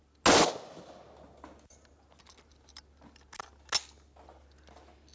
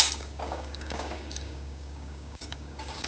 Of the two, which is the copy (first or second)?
second